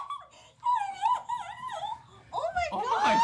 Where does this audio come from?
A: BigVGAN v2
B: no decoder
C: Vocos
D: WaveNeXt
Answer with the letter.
B